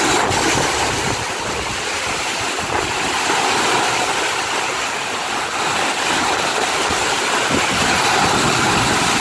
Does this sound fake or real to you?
real